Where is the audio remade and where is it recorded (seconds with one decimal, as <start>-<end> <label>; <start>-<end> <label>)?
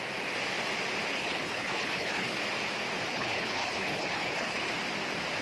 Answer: 0.0-1.1 recorded; 1.1-2.4 remade; 2.4-3.1 recorded; 3.1-4.7 remade; 4.7-5.4 recorded